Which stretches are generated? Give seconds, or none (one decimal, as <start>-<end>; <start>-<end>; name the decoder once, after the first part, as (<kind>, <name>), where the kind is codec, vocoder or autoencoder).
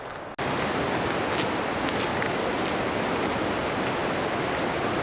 none